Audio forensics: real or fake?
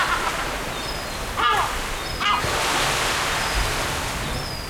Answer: real